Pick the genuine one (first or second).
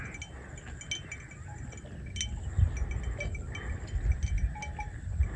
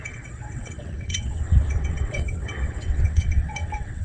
first